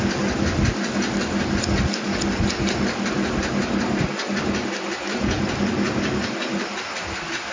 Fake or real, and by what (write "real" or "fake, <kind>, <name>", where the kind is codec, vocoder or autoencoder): real